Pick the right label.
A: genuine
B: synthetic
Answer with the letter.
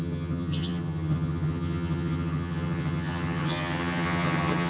B